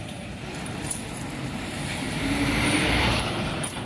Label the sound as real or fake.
fake